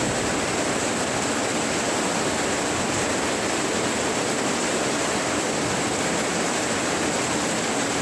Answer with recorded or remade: recorded